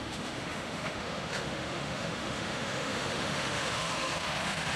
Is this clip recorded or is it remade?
remade